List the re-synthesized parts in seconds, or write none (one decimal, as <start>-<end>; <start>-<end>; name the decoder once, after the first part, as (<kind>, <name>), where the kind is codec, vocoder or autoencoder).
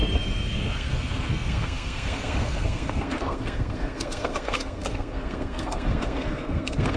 0.0-7.0 (codec, SNAC)